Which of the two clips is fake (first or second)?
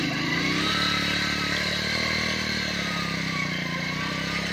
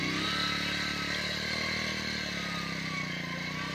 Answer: first